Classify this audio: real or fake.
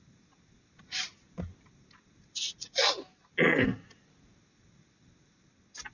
real